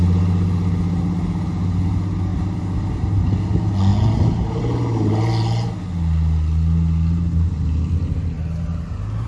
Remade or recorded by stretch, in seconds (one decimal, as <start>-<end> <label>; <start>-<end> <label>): 0.0-2.3 recorded; 2.3-3.0 remade; 3.0-9.3 recorded